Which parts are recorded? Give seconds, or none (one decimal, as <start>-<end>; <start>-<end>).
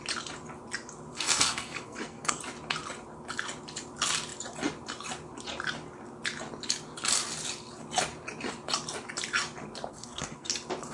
0.0-1.1; 2.4-9.9; 10.5-10.9